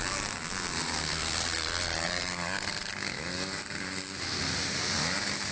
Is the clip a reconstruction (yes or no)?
no